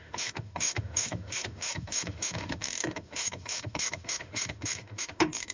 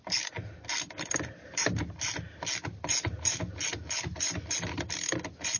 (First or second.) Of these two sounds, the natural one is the second